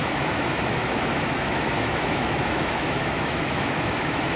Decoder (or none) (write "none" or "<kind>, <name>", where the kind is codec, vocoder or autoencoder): autoencoder, DAC-VAE